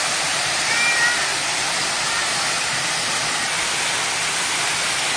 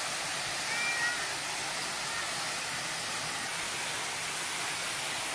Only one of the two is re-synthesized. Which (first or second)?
first